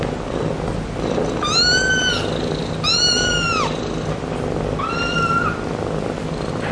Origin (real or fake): real